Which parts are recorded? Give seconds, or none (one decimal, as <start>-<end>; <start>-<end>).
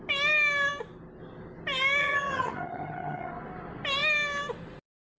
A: 0.0-2.0; 3.3-5.2